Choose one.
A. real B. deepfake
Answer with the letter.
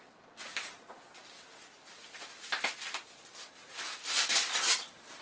A